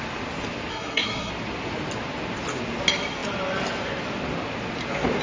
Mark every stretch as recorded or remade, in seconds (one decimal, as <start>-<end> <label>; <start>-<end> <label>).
0.0-0.7 recorded; 0.7-1.3 remade; 1.3-5.2 recorded